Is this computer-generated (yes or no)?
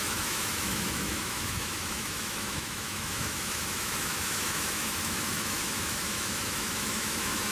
yes